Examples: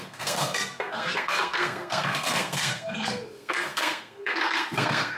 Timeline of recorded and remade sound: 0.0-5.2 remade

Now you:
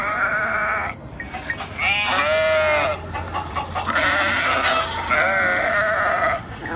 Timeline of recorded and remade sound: 0.0-6.8 recorded

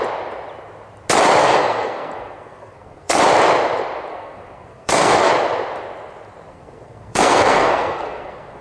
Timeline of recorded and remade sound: 0.0-1.4 recorded; 1.4-3.2 remade; 3.2-4.1 recorded; 4.1-5.3 remade; 5.3-6.5 recorded; 6.5-8.6 remade

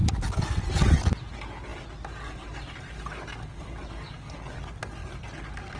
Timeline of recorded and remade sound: 0.0-5.8 recorded

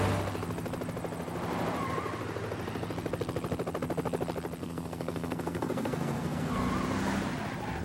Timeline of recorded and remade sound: 0.0-4.6 recorded; 4.6-6.7 remade; 6.7-7.8 recorded